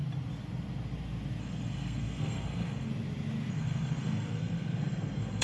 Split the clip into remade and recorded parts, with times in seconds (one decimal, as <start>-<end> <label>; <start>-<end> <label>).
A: 0.0-1.4 recorded; 1.4-2.9 remade; 2.9-3.5 recorded; 3.5-5.4 remade